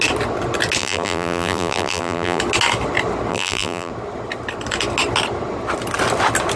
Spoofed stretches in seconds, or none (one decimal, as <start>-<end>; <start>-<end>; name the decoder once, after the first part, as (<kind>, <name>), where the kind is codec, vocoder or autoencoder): 0.8-2.4 (vocoder, BigVGAN v2); 3.3-3.9